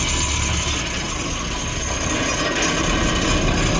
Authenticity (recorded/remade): recorded